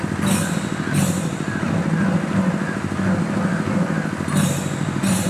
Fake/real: real